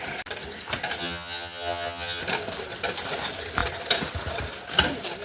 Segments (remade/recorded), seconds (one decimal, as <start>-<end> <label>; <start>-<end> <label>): 0.0-1.0 recorded; 1.0-2.2 remade; 2.2-5.2 recorded

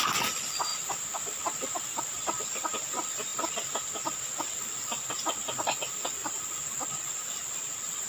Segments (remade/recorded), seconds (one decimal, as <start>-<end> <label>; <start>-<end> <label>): 0.0-8.1 remade

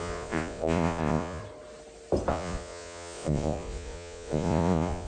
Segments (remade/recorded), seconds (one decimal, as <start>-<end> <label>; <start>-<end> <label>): 0.0-1.4 remade; 1.4-2.3 recorded; 2.3-5.1 remade

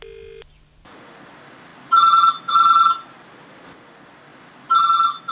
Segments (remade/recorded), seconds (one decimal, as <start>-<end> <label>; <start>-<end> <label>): 0.0-5.3 recorded

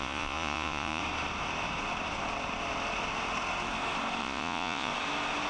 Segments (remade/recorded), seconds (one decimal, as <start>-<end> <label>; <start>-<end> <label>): 0.0-1.0 remade; 1.0-4.2 recorded; 4.2-4.9 remade; 4.9-5.5 recorded

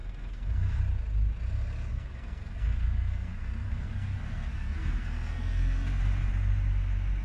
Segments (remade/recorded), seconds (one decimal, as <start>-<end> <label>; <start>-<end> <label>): 0.0-0.8 remade; 0.8-1.9 recorded; 1.9-6.0 remade; 6.0-7.2 recorded

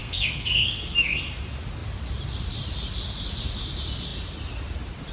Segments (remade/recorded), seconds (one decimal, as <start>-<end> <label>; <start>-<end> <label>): 0.0-1.2 remade; 1.2-5.1 recorded

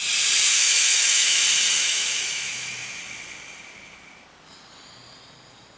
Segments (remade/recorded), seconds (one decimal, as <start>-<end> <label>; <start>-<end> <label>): 0.0-0.5 recorded; 0.5-1.4 remade; 1.4-1.8 recorded; 1.8-3.0 remade; 3.0-5.8 recorded